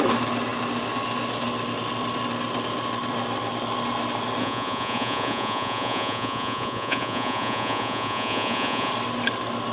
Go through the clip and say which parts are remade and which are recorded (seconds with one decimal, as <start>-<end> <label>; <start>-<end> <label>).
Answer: 0.0-4.4 recorded; 4.4-8.9 remade; 8.9-9.7 recorded